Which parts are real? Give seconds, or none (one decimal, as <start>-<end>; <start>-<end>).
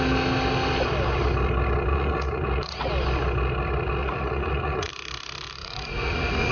0.0-1.9; 2.9-4.0; 4.9-5.6